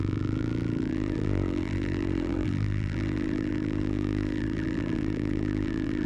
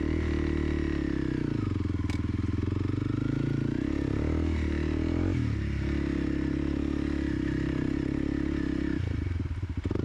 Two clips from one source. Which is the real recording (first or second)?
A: second